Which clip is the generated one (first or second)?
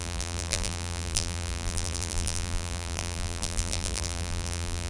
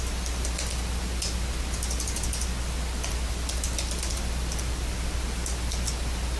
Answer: first